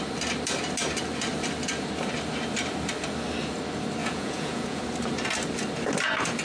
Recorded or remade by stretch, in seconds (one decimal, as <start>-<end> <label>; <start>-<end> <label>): 0.0-4.0 recorded; 4.0-4.8 remade; 4.8-6.4 recorded

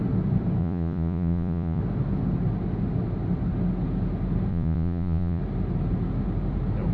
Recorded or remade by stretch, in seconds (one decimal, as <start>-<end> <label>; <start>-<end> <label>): 0.0-0.6 recorded; 0.6-1.8 remade; 1.8-4.5 recorded; 4.5-5.4 remade; 5.4-6.9 recorded

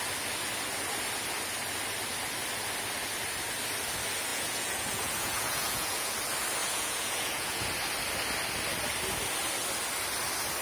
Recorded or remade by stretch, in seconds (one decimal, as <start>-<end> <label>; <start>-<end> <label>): 0.0-4.3 recorded; 4.3-6.1 remade; 6.1-6.6 recorded; 6.6-7.6 remade; 7.6-10.6 recorded

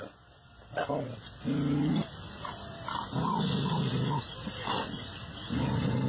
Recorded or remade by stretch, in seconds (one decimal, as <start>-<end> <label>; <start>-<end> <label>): 0.0-6.1 recorded

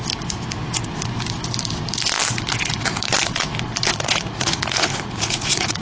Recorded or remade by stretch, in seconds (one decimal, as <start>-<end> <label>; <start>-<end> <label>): 0.0-3.9 recorded; 3.9-5.8 remade

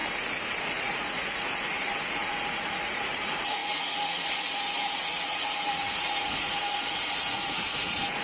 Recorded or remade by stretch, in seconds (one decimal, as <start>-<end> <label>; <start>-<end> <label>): 0.0-0.6 recorded; 0.6-8.2 remade

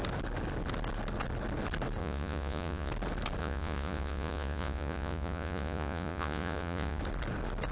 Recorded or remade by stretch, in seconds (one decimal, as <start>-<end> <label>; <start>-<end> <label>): 0.0-2.0 recorded; 2.0-2.9 remade; 2.9-3.4 recorded; 3.4-7.0 remade; 7.0-7.7 recorded